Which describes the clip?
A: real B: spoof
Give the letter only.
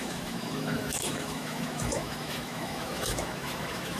B